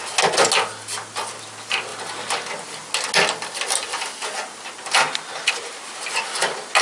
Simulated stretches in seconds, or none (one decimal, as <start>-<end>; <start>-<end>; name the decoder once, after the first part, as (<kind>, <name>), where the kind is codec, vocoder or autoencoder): none

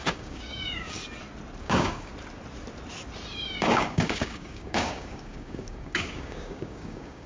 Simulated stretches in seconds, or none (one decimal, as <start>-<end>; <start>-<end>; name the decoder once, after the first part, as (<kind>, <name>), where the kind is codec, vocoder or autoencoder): 0.0-1.0 (codec, DAC); 1.6-2.1; 3.3-7.3

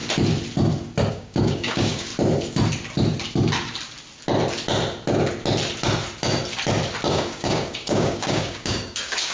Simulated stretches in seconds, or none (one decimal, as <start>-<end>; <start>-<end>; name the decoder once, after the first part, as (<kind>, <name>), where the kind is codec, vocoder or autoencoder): 1.1-2.1 (codec, DAC); 7.1-9.3

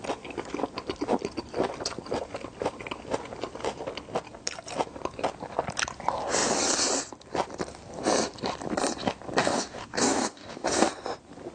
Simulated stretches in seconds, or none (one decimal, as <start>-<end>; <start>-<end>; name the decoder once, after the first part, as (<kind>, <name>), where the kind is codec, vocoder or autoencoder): 9.4-10.9 (codec, DAC)